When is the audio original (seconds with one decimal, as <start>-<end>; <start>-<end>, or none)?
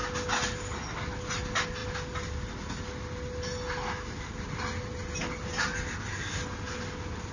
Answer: 0.0-7.3